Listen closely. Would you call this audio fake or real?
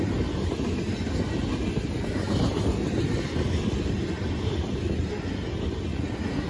real